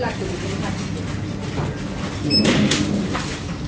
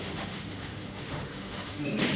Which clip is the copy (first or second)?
second